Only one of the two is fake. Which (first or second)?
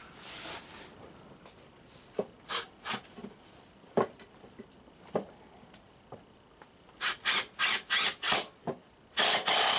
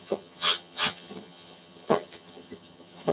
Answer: second